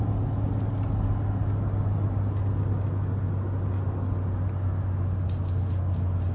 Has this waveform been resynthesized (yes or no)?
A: no